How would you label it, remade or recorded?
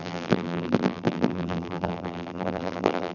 remade